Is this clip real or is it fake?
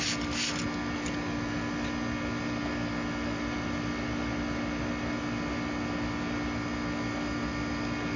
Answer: real